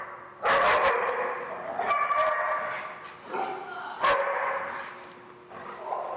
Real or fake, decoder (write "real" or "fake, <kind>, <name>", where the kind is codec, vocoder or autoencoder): real